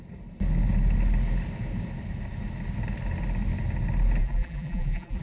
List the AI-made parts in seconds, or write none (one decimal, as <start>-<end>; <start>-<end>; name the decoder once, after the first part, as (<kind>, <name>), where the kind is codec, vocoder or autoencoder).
4.2-5.2 (vocoder, BigVGAN v2)